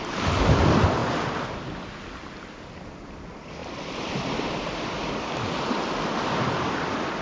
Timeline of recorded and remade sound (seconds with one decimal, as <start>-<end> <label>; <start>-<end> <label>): 0.0-7.2 recorded